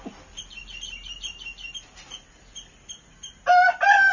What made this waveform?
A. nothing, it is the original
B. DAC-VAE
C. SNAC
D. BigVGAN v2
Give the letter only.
A